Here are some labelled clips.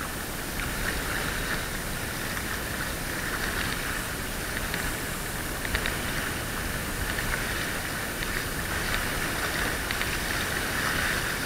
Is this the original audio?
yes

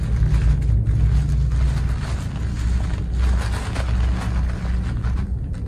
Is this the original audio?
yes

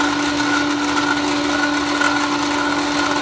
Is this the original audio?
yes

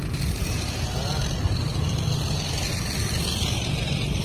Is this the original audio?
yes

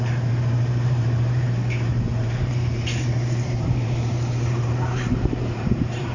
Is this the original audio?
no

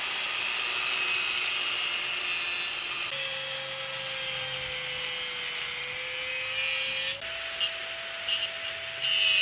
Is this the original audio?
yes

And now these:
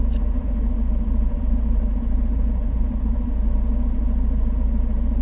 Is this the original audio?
no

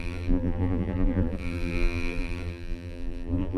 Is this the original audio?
no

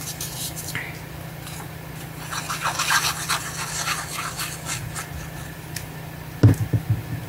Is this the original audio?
yes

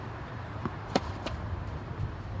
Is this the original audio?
no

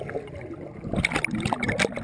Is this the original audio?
yes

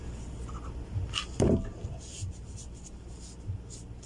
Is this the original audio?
no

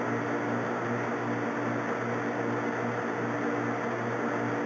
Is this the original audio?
yes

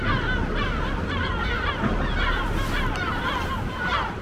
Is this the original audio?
yes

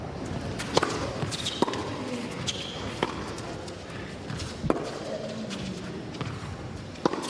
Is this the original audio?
yes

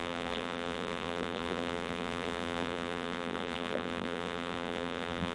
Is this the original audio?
no